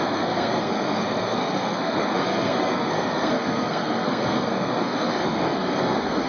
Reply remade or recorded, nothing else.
remade